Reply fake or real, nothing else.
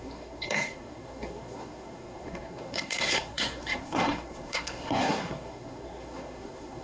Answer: fake